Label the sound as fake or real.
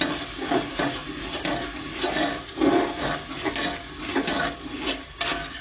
real